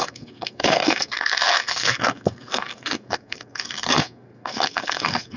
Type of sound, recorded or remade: remade